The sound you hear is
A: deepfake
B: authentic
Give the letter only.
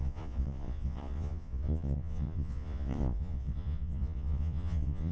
A